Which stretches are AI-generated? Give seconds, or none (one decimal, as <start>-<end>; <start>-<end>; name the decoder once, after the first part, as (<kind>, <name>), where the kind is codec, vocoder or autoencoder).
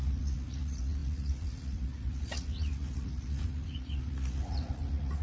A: 0.0-5.2 (vocoder, Vocos)